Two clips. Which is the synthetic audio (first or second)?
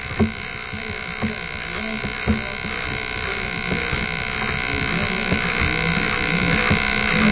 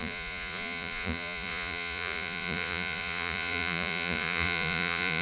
second